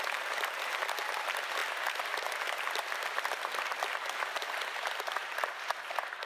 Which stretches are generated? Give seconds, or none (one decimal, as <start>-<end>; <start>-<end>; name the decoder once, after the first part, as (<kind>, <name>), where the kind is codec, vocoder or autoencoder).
1.6-3.8 (vocoder, BigVGAN v2)